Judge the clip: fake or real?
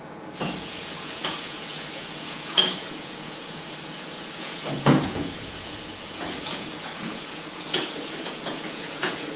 fake